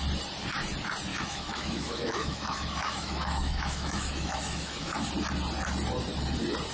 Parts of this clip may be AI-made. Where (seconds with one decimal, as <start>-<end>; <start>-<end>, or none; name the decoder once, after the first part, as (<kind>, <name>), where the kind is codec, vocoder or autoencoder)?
1.1-5.1 (autoencoder, DAC-VAE)